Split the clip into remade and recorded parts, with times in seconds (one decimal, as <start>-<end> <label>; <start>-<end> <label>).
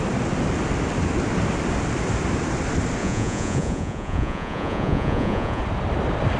0.0-3.0 recorded; 3.0-5.6 remade; 5.6-6.4 recorded